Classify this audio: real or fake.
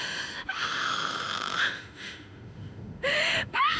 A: fake